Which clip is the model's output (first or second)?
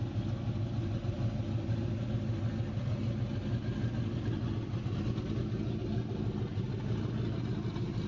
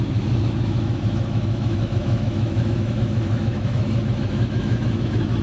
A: second